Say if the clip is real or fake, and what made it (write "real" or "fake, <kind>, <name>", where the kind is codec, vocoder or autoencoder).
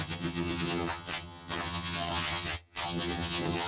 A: fake, vocoder, HiFi-GAN